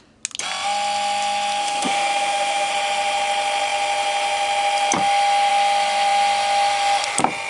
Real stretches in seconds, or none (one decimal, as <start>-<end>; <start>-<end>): 0.0-1.6; 2.7-7.5